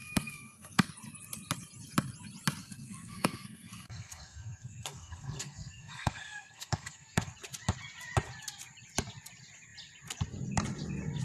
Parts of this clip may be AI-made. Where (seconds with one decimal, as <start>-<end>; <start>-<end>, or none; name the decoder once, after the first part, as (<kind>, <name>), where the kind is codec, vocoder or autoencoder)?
0.0-0.9 (codec, SNAC); 2.6-7.3